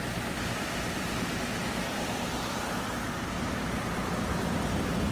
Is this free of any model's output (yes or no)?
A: yes